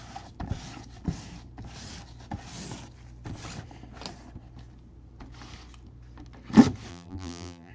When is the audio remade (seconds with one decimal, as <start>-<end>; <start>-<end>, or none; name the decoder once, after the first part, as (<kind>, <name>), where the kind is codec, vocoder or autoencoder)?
6.9-7.7 (vocoder, BigVGAN v2)